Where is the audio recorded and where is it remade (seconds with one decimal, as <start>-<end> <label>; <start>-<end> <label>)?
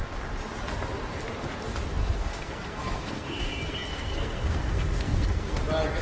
0.0-2.0 recorded; 2.0-5.6 remade; 5.6-6.0 recorded